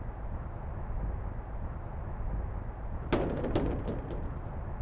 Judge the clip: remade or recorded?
recorded